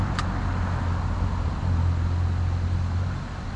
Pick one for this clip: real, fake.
real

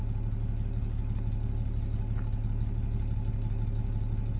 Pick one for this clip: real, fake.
real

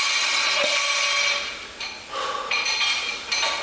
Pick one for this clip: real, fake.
real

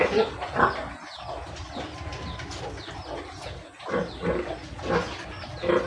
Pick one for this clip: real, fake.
real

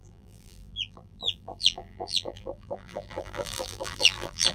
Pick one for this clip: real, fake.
fake